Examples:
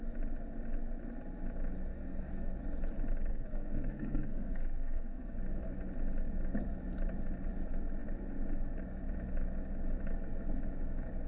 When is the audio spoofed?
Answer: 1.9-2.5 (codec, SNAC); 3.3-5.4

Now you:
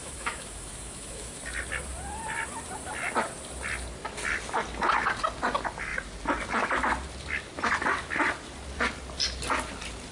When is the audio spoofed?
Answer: 0.0-1.4 (autoencoder, DAC-VAE)

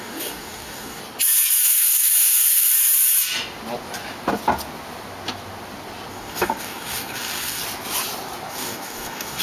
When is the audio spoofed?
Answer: 0.0-1.0 (codec, DAC); 1.6-2.7; 6.1-7.6; 8.5-9.4

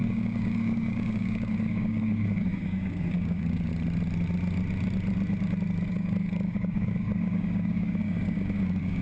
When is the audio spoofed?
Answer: 0.0-3.7 (codec, DAC); 5.9-9.0

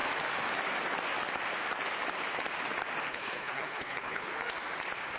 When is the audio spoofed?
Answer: 3.1-4.3 (codec, HILCodec)

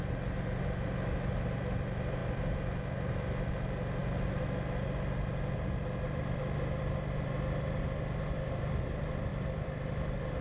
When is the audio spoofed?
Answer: 2.2-3.1 (vocoder, BigVGAN v2); 9.3-10.4

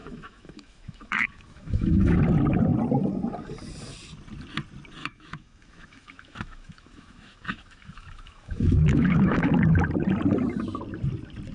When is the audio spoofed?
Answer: 0.0-2.2 (autoencoder, DAC-VAE); 5.0-9.6